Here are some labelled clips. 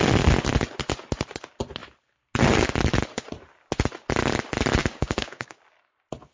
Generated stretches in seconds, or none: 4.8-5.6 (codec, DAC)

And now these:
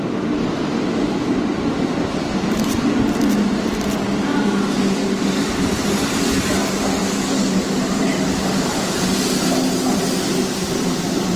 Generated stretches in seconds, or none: 7.0-7.6 (codec, DAC); 8.1-8.6

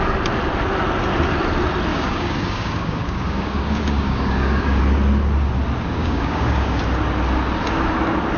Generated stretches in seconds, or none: 1.9-4.8 (codec, DAC); 6.0-6.8

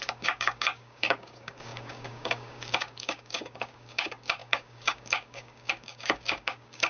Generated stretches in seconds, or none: 0.0-6.9 (codec, DAC)

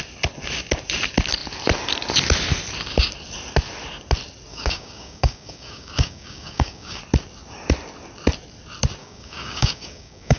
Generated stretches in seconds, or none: 4.5-7.0 (codec, DAC); 9.0-10.4

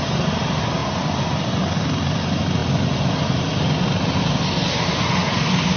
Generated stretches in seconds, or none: none

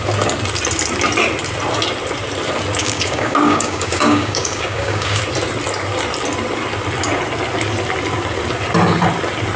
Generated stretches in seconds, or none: 2.8-5.2 (codec, DAC)

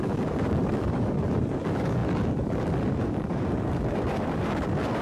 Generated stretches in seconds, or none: 0.0-5.0 (codec, DAC)